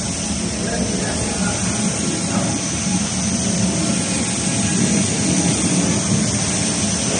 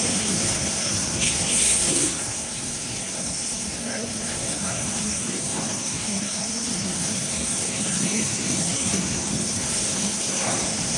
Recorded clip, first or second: first